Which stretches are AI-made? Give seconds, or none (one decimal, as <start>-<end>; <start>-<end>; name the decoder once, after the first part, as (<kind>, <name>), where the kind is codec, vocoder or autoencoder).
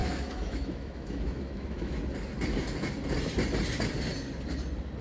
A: 0.0-2.0 (autoencoder, DAC-VAE)